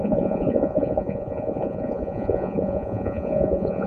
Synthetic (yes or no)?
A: yes